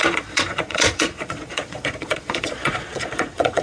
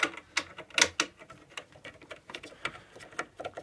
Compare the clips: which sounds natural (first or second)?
second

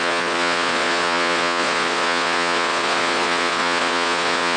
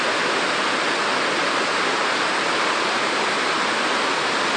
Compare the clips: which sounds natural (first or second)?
second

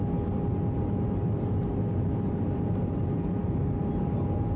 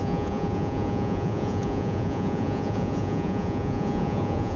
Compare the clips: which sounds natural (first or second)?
first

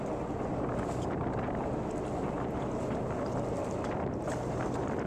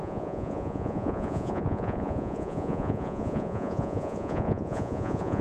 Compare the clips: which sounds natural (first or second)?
first